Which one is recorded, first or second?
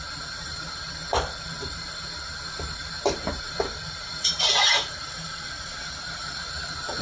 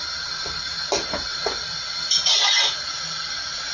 second